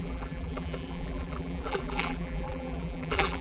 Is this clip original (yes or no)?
no